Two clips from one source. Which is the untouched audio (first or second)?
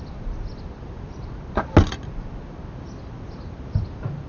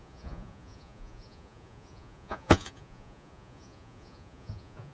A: first